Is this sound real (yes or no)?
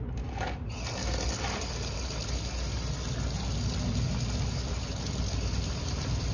yes